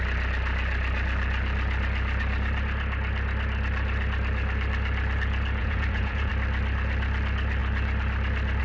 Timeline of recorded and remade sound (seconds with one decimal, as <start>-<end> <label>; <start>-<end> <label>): 0.0-5.6 recorded; 5.6-6.3 remade; 6.3-8.6 recorded